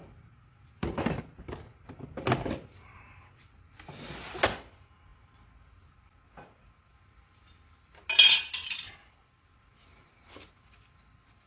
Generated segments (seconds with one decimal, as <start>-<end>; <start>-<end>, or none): none